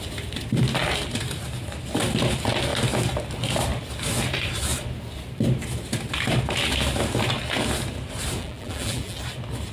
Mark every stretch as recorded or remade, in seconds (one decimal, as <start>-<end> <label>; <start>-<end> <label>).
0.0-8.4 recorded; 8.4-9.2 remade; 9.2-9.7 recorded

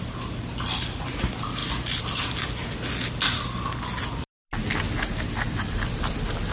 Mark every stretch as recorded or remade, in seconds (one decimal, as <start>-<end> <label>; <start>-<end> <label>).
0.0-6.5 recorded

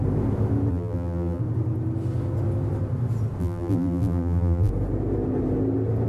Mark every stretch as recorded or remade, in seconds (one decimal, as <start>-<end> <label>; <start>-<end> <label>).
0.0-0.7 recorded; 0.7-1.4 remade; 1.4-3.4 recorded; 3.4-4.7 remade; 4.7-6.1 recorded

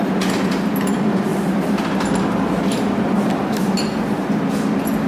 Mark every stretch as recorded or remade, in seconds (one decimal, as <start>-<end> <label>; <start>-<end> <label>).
0.0-5.1 recorded